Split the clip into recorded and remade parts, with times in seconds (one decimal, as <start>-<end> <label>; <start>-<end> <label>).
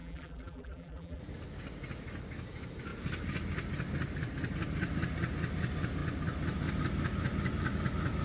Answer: 0.0-1.2 remade; 1.2-8.2 recorded